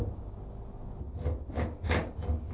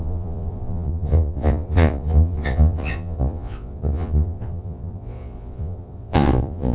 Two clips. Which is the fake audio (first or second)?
second